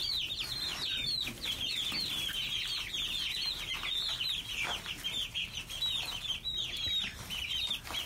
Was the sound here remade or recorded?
recorded